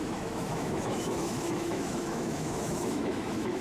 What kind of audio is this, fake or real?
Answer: fake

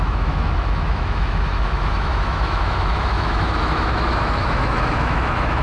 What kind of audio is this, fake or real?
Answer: fake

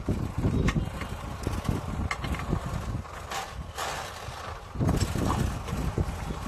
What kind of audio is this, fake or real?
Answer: real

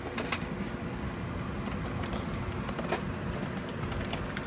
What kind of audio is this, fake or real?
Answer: real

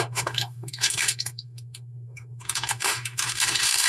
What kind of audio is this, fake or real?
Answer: fake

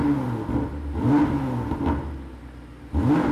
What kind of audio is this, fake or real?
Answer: real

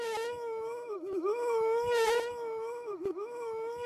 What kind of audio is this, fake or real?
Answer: fake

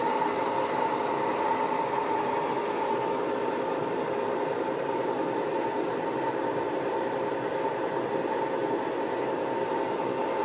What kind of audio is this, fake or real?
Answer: real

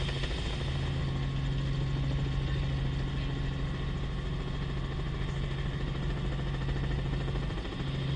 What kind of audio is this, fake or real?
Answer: real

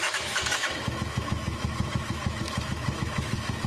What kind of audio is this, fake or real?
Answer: fake